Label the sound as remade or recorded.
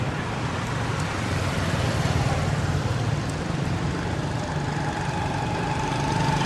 recorded